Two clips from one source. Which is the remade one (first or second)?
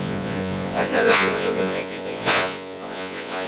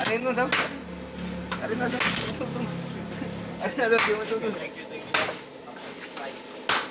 first